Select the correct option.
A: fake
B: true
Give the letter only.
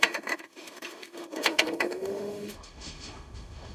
A